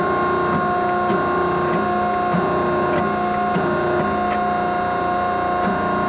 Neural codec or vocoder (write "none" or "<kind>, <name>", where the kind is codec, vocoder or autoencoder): none